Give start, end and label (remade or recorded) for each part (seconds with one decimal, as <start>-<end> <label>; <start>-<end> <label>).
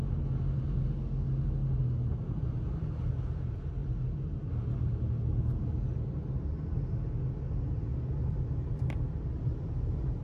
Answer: 0.0-10.2 recorded